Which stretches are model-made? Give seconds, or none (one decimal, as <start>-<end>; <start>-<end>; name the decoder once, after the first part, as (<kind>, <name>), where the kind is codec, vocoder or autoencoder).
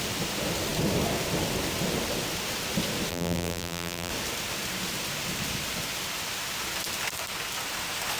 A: 3.1-4.1 (vocoder, BigVGAN v2)